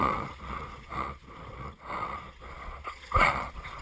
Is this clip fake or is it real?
fake